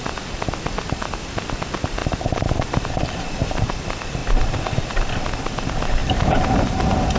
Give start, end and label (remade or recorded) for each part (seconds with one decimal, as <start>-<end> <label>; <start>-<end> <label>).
0.0-2.0 recorded; 2.0-3.8 remade; 3.8-6.0 recorded; 6.0-7.2 remade